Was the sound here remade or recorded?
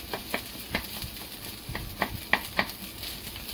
recorded